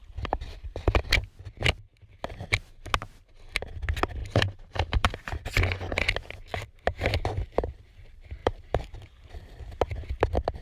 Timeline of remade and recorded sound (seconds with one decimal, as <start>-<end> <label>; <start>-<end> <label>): 0.0-4.2 recorded; 4.2-5.2 remade; 5.2-8.4 recorded; 8.4-9.8 remade; 9.8-10.6 recorded